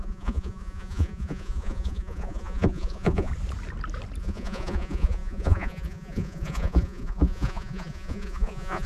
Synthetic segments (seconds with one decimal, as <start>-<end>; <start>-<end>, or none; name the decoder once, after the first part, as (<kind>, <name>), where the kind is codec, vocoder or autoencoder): 0.0-3.3 (vocoder, Vocos); 4.2-8.9